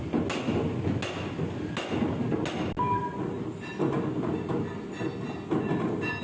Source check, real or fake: real